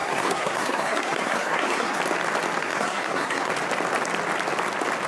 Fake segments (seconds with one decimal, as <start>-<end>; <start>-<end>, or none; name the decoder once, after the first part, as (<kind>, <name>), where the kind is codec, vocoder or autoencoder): 0.0-2.0 (codec, SNAC); 2.6-3.5